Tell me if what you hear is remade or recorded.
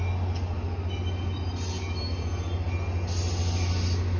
recorded